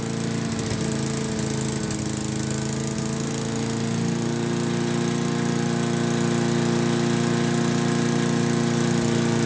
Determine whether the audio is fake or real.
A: real